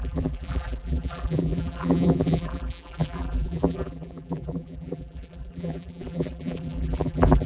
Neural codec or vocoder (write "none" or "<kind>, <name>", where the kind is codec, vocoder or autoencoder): vocoder, BigVGAN v2